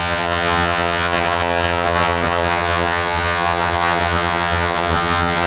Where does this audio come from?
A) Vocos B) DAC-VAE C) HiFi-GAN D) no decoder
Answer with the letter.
C